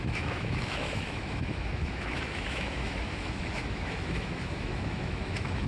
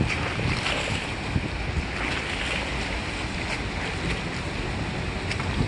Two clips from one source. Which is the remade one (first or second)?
first